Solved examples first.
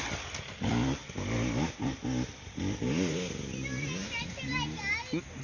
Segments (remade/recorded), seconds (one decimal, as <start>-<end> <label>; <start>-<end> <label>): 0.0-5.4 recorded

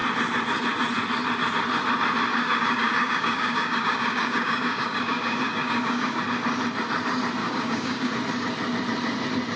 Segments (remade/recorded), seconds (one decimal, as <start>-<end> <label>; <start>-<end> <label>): 0.0-2.3 recorded; 2.3-6.2 remade; 6.2-7.4 recorded; 7.4-8.1 remade; 8.1-9.6 recorded

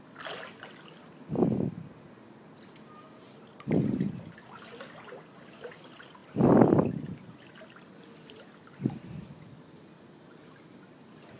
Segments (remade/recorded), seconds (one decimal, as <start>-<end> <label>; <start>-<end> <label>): 0.0-11.4 recorded

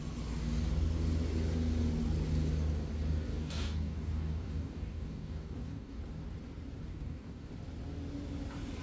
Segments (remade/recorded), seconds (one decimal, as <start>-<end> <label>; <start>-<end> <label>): 0.0-3.3 recorded; 3.3-6.0 remade; 6.0-6.9 recorded; 6.9-7.5 remade; 7.5-8.8 recorded

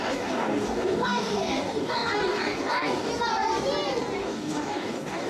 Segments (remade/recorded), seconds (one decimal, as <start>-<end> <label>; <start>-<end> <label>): 0.0-3.1 remade; 3.1-4.2 recorded; 4.2-5.3 remade